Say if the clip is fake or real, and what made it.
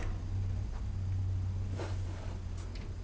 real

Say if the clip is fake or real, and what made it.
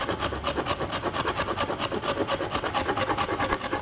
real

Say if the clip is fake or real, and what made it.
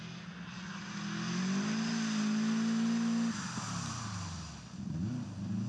real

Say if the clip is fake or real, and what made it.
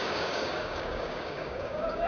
fake, codec, DAC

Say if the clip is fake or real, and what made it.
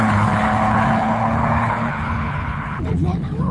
fake, codec, HILCodec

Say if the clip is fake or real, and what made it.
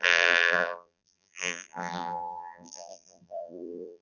fake, vocoder, BigVGAN v2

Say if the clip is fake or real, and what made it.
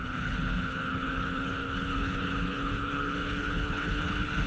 fake, codec, HILCodec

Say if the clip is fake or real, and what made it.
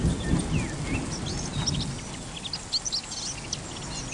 real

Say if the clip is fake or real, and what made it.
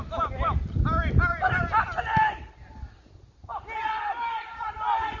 real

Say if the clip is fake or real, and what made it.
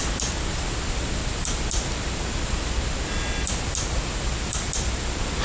real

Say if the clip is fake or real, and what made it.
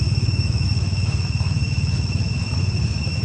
fake, autoencoder, DAC-VAE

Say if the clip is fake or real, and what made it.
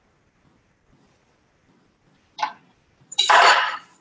fake, vocoder, BigVGAN v2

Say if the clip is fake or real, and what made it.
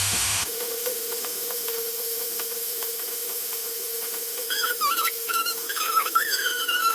fake, autoencoder, DAC-VAE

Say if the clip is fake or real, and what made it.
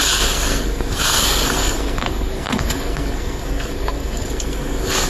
fake, codec, SNAC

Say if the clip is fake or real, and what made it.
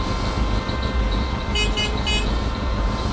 real